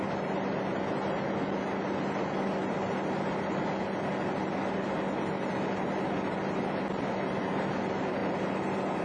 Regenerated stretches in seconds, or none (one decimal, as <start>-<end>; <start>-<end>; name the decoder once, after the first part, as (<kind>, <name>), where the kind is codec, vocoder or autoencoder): none